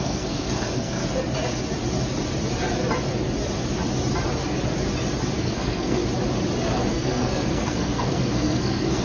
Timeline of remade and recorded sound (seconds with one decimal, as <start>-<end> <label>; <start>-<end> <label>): 0.0-1.0 remade; 1.0-5.4 recorded; 5.4-6.0 remade; 6.0-6.9 recorded; 6.9-9.0 remade